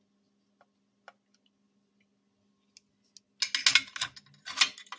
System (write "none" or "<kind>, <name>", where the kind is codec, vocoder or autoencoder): none